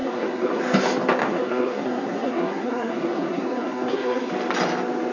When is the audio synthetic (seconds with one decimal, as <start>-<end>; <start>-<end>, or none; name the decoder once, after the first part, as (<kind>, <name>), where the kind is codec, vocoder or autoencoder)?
0.0-0.6 (codec, SNAC); 1.2-4.3